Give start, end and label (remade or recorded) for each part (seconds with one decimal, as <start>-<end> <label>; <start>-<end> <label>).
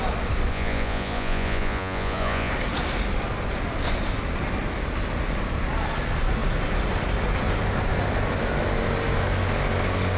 0.0-0.5 recorded; 0.5-2.5 remade; 2.5-10.2 recorded